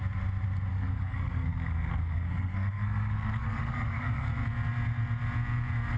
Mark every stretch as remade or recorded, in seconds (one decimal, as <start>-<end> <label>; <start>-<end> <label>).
0.0-0.7 recorded; 0.7-4.3 remade; 4.3-6.0 recorded